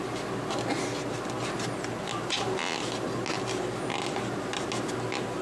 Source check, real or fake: real